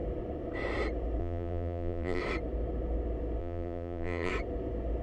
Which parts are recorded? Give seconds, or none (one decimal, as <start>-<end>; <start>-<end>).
0.0-1.2; 2.2-3.4; 4.3-5.0